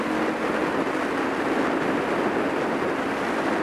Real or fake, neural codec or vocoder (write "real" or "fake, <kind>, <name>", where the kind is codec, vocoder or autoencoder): real